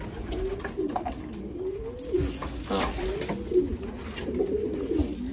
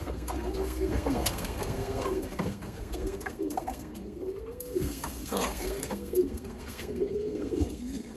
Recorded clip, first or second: first